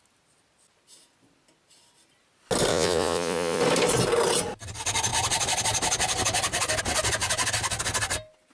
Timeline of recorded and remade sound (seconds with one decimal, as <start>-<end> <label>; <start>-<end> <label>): 0.0-2.7 recorded; 2.7-3.6 remade; 3.6-8.5 recorded